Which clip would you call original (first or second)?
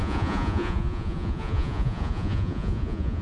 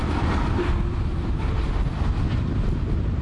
second